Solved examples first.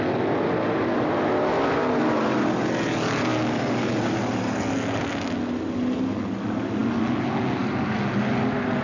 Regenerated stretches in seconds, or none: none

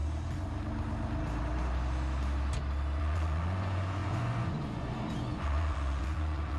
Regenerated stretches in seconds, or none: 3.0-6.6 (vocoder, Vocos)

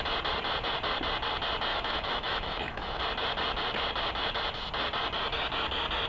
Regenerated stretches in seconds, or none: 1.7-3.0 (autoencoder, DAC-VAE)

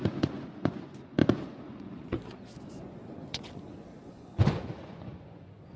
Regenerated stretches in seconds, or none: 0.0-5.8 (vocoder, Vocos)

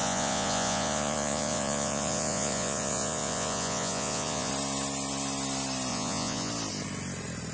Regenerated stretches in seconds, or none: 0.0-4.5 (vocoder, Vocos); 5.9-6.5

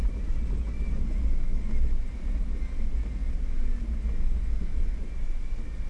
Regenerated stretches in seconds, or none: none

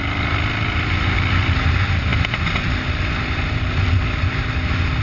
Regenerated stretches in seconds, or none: none

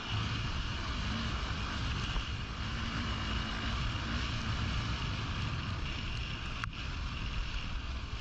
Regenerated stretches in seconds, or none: none